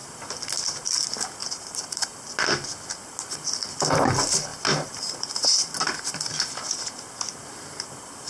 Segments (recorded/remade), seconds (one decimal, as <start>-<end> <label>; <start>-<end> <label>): 0.0-1.4 recorded; 1.4-2.3 remade; 2.3-4.5 recorded; 4.5-6.0 remade; 6.0-8.3 recorded